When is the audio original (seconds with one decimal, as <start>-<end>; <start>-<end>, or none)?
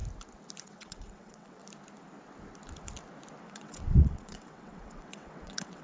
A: 0.0-0.6; 1.6-3.4